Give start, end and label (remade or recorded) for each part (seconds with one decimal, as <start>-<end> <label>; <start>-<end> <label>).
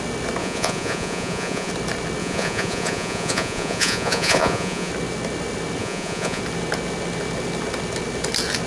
0.0-0.4 recorded; 0.4-1.7 remade; 1.7-2.2 recorded; 2.2-4.9 remade; 4.9-5.8 recorded; 5.8-6.4 remade; 6.4-8.7 recorded